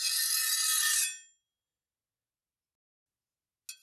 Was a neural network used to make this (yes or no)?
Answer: no